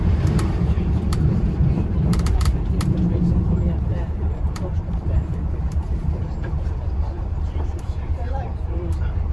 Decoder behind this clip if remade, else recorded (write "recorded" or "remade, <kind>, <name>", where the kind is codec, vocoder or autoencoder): remade, vocoder, BigVGAN v2